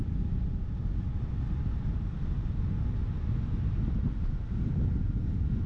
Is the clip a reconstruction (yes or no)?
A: no